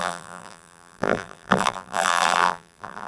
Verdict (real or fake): fake